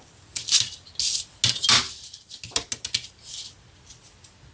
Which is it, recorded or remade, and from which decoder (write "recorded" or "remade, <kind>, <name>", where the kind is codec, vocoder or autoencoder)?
recorded